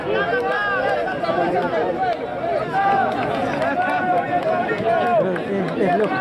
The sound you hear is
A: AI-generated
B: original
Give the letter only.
B